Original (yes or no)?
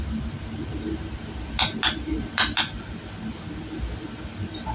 yes